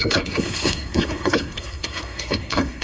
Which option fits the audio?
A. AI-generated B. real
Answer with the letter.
A